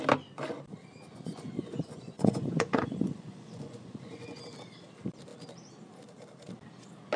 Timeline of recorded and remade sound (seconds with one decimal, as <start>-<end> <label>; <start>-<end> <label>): 0.0-1.1 recorded; 1.1-4.4 remade; 4.4-7.2 recorded